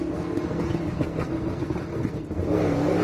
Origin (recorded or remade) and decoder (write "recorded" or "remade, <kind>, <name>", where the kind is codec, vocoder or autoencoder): remade, codec, SNAC